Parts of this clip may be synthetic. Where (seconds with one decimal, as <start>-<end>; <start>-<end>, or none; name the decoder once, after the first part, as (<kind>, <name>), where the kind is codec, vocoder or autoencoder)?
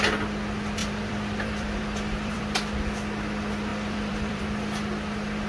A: 0.8-2.4 (vocoder, BigVGAN v2); 3.7-4.4